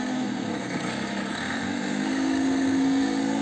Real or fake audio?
fake